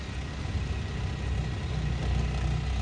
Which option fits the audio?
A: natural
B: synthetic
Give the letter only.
A